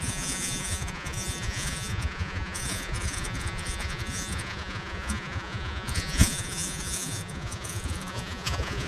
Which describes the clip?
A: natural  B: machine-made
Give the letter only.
B